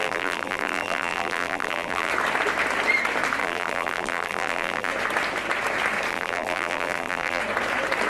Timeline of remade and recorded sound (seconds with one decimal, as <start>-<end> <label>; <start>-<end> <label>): 0.0-2.1 remade; 2.1-3.4 recorded; 3.4-4.9 remade; 4.9-6.1 recorded; 6.1-7.4 remade; 7.4-8.1 recorded

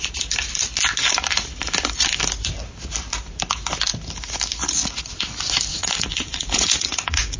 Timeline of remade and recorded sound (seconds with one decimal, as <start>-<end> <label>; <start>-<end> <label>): 0.0-5.7 recorded; 5.7-7.4 remade

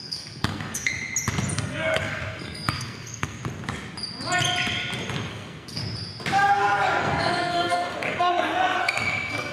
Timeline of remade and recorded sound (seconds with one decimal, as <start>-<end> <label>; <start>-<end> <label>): 0.0-0.9 remade; 0.9-1.5 recorded; 1.5-3.4 remade; 3.4-5.3 recorded; 5.3-5.8 remade; 5.8-7.0 recorded; 7.0-9.5 remade

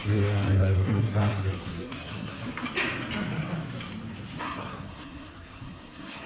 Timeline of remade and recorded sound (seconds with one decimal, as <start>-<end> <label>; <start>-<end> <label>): 0.0-2.4 remade; 2.4-4.4 recorded; 4.4-6.3 remade

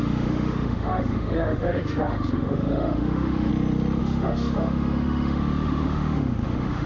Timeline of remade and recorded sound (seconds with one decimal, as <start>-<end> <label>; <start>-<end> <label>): 0.0-3.5 remade; 3.5-4.0 recorded; 4.0-6.9 remade